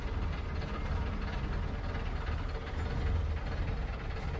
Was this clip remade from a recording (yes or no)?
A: no